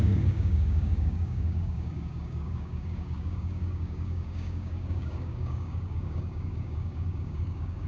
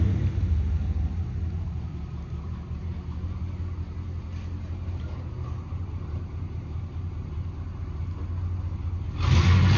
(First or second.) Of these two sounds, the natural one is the second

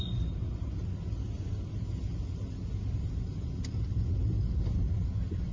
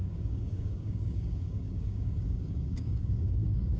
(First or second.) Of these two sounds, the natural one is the first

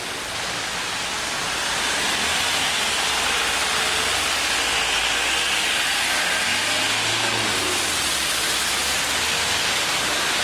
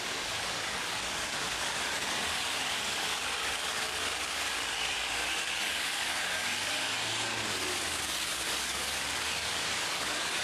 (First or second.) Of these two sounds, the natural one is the first